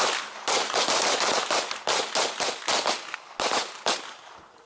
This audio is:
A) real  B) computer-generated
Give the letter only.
A